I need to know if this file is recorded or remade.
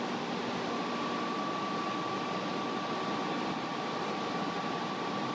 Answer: recorded